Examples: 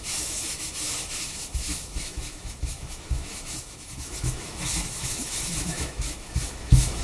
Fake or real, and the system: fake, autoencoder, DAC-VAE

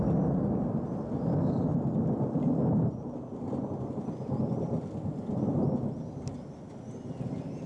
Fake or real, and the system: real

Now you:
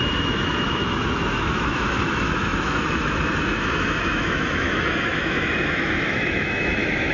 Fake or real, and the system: fake, autoencoder, DAC-VAE